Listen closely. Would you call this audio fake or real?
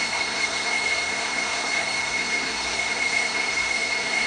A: fake